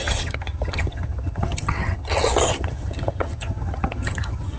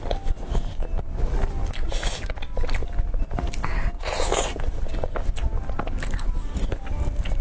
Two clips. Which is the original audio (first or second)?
second